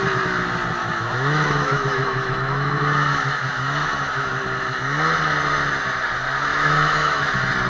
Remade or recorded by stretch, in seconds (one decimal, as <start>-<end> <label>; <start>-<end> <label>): 0.0-0.8 recorded; 0.8-4.3 remade; 4.3-6.5 recorded; 6.5-7.3 remade; 7.3-7.7 recorded